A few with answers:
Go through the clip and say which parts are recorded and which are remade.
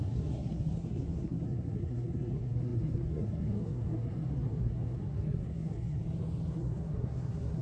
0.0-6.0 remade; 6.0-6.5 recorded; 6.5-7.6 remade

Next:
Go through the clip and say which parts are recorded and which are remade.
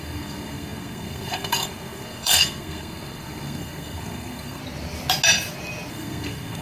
0.0-4.6 remade; 4.6-5.9 recorded; 5.9-6.6 remade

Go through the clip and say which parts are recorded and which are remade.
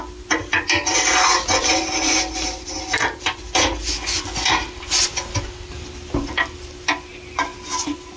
0.0-8.2 recorded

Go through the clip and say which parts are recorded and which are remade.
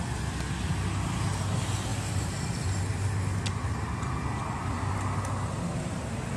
0.0-6.4 recorded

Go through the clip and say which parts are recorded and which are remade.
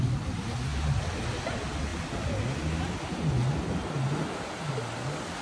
0.0-5.4 recorded